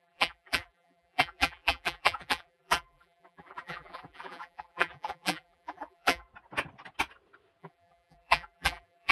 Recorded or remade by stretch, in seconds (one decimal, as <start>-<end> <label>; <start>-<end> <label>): 0.0-6.3 remade; 6.3-7.6 recorded; 7.6-9.1 remade